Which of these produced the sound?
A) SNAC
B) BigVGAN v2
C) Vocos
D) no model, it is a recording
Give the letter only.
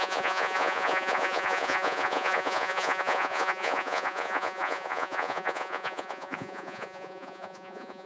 C